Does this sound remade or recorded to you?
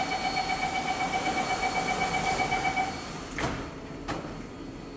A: recorded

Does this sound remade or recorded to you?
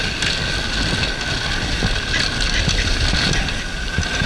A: recorded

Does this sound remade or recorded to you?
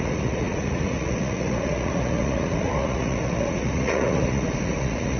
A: remade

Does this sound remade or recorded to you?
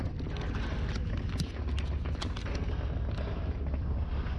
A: recorded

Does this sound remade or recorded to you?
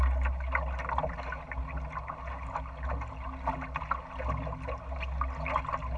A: recorded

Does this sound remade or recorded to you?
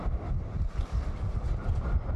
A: remade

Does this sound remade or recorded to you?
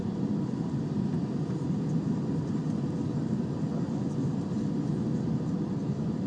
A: recorded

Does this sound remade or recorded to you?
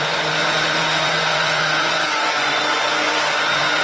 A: remade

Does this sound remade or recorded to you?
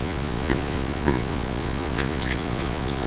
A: remade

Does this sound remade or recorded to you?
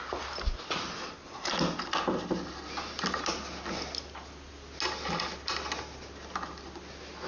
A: recorded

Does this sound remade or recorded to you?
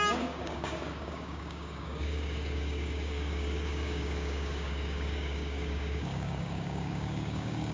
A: remade